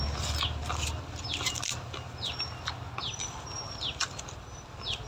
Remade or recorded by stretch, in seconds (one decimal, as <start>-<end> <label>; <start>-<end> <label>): 0.0-5.1 recorded